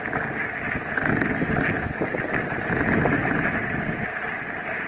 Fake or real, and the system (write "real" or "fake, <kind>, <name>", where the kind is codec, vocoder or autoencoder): real